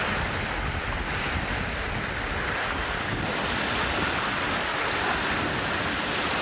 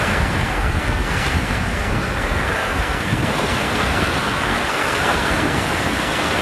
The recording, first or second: first